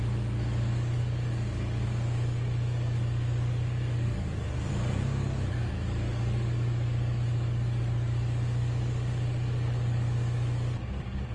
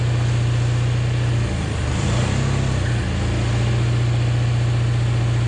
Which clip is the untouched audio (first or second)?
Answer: second